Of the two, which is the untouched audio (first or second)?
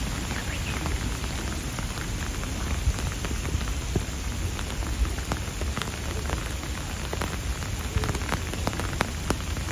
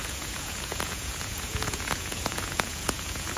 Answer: first